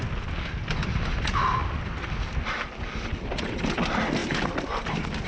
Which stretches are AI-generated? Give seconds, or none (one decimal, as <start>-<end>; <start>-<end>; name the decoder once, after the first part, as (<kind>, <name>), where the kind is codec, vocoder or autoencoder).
none